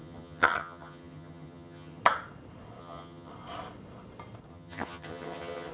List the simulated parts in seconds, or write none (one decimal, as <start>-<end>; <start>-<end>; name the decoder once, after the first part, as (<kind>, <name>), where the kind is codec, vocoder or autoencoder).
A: 0.0-2.0 (vocoder, HiFi-GAN); 2.8-3.3; 4.5-5.7